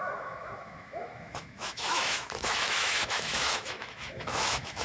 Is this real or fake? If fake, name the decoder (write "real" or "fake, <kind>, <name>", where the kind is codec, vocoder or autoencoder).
fake, autoencoder, DAC-VAE